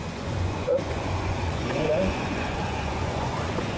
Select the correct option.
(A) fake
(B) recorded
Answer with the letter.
A